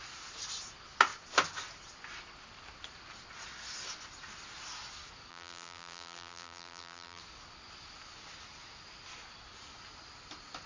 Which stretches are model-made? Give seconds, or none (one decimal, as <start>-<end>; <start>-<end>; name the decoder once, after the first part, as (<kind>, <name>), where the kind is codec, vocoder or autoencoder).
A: 5.3-7.2 (vocoder, BigVGAN v2)